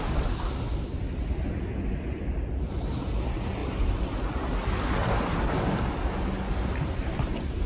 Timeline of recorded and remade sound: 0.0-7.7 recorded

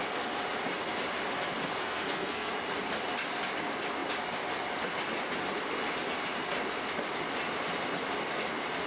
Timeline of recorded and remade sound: 0.0-1.8 recorded; 1.8-2.5 remade; 2.5-8.9 recorded

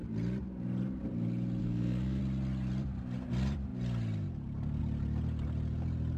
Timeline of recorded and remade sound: 0.0-1.6 recorded; 1.6-2.2 remade; 2.2-6.2 recorded